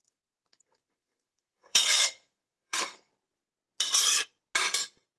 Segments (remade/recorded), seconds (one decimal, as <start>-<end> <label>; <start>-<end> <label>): 0.0-3.1 remade; 3.1-5.2 recorded